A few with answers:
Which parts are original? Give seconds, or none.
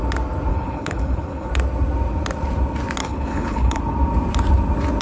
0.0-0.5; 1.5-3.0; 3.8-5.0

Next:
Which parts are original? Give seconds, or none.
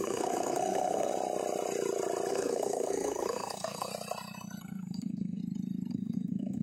1.1-2.3; 3.9-4.6; 5.4-5.9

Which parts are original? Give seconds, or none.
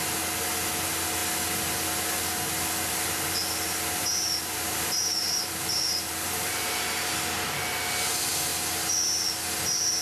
0.0-4.0; 6.1-10.0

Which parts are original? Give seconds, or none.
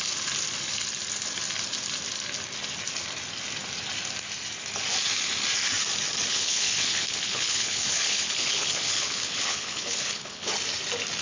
0.0-6.3; 10.5-11.2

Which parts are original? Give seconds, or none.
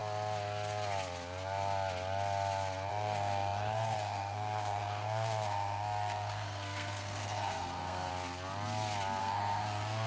0.0-2.9; 8.1-9.2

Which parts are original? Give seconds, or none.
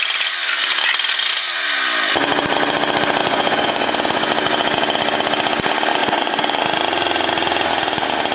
0.0-3.2; 4.3-6.0; 6.6-8.3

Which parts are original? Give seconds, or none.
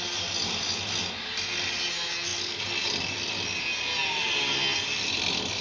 0.0-5.6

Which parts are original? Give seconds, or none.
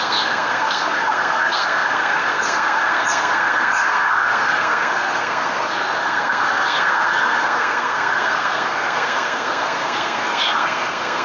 none